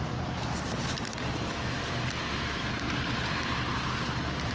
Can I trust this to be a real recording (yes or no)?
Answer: no